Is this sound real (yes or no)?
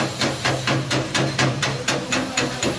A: no